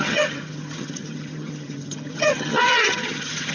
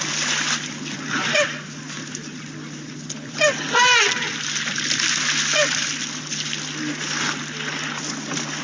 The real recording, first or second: second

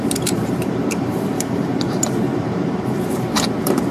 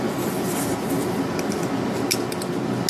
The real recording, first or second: second